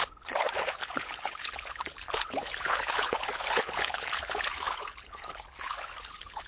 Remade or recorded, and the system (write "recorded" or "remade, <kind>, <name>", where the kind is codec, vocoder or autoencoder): remade, codec, HILCodec